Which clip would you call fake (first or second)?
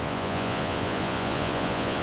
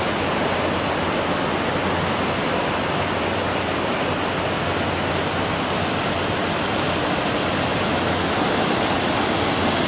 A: first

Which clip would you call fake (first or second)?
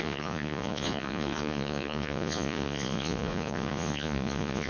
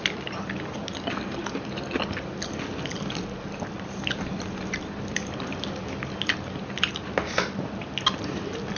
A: first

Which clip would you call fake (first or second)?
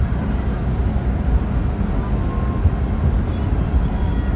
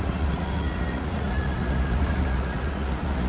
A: second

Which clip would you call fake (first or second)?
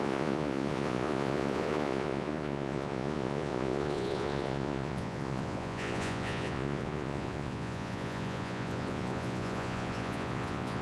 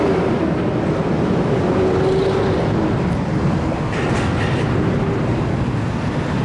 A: first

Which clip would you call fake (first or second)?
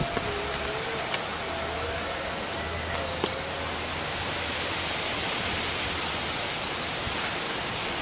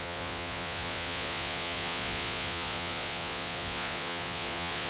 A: second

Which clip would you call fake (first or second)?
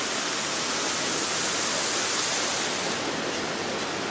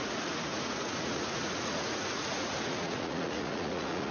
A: second